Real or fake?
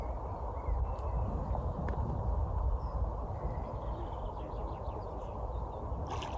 real